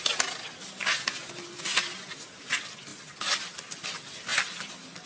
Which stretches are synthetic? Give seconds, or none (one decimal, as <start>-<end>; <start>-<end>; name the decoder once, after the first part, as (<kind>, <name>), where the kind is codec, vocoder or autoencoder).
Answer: none